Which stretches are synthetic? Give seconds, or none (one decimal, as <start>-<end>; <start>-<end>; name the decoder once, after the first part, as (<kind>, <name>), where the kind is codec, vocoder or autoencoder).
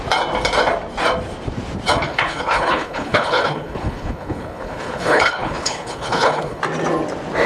2.1-6.6 (codec, HILCodec)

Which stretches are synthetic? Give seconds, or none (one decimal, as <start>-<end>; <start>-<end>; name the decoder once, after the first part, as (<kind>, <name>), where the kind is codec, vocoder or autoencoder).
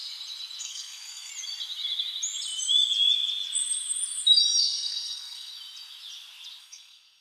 0.6-1.3 (codec, SNAC); 4.6-5.5; 6.6-7.2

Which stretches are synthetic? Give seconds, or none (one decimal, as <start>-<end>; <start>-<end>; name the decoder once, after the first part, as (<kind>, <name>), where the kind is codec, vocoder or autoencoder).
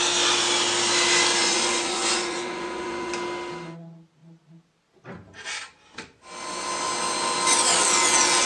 1.3-3.1 (vocoder, Vocos)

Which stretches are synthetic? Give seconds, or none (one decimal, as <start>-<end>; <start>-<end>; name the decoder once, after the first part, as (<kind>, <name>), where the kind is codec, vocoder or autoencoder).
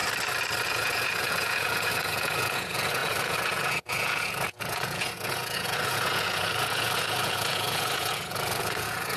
0.6-9.2 (vocoder, Vocos)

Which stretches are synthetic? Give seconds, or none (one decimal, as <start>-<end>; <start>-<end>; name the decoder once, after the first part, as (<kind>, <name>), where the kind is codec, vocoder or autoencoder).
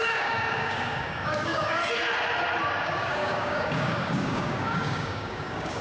0.0-1.8 (codec, DAC); 2.8-5.8